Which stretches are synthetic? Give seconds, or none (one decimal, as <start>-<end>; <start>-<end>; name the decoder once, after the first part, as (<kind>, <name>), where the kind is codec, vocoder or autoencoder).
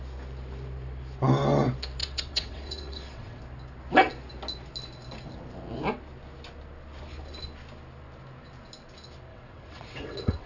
2.0-3.4 (vocoder, WaveNeXt); 9.3-10.5